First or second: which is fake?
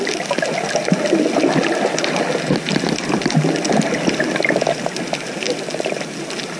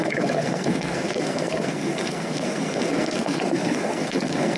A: second